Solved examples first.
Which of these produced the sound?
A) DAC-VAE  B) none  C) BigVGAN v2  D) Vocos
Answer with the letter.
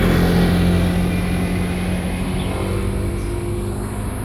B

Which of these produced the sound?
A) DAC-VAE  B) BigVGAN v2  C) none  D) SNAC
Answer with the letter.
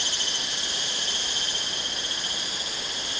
C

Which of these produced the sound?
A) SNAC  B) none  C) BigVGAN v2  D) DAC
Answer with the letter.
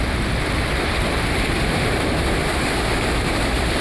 C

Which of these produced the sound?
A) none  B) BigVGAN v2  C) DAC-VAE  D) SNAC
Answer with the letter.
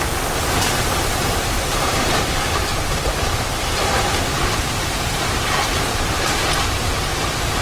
B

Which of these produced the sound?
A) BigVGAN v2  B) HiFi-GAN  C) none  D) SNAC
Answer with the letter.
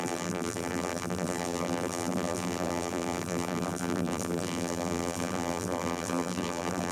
A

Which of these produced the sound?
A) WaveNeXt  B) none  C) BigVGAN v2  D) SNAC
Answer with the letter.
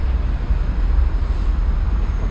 C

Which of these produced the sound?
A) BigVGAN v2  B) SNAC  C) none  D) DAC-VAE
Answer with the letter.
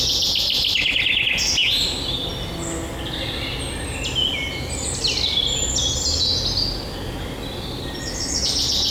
C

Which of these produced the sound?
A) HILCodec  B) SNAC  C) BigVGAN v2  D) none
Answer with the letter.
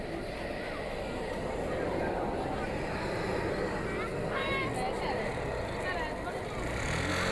D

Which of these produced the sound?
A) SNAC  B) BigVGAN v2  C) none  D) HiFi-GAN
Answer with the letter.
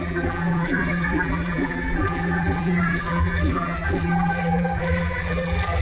B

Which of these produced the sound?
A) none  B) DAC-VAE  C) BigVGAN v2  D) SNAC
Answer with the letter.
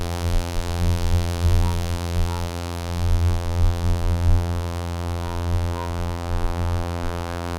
C